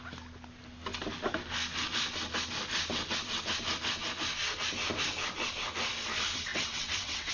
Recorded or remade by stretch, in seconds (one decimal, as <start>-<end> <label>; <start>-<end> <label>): 0.0-6.5 recorded; 6.5-7.3 remade

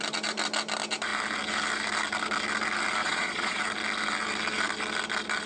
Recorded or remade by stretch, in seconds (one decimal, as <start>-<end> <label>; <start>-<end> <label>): 0.0-3.0 recorded; 3.0-3.6 remade; 3.6-5.5 recorded

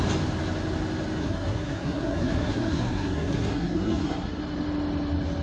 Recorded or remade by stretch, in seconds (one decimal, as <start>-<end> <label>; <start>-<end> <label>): 0.0-1.2 recorded; 1.2-4.4 remade; 4.4-5.4 recorded

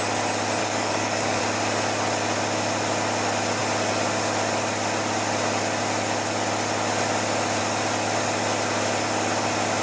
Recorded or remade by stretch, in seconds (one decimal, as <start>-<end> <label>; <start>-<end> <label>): 0.0-0.6 recorded; 0.6-1.4 remade; 1.4-9.8 recorded

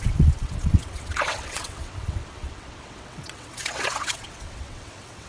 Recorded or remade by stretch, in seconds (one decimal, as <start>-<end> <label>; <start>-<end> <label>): 0.0-5.3 remade

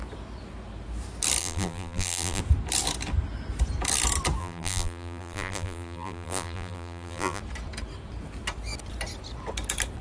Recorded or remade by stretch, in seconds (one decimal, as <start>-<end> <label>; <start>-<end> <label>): 0.0-1.4 recorded; 1.4-2.4 remade; 2.4-4.4 recorded; 4.4-7.4 remade; 7.4-10.0 recorded